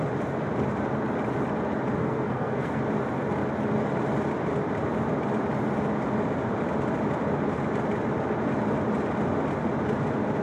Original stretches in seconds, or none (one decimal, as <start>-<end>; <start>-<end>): 0.0-2.0; 2.8-10.4